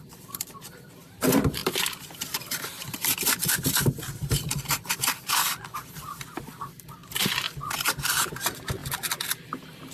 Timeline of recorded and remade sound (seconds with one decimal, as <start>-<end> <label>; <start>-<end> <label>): 0.0-7.0 remade; 7.0-8.3 recorded; 8.3-9.9 remade